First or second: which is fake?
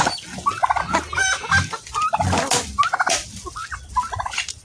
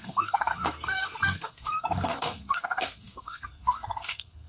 second